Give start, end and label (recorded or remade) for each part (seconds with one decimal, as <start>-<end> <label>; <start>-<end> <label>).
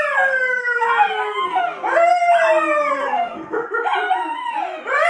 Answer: 0.0-0.6 recorded; 0.6-1.6 remade; 1.6-2.9 recorded; 2.9-3.7 remade; 3.7-5.1 recorded